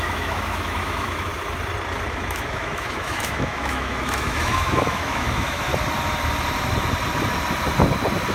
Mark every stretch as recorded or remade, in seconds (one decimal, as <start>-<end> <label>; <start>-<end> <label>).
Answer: 0.0-1.3 remade; 1.3-2.1 recorded; 2.1-5.7 remade; 5.7-8.3 recorded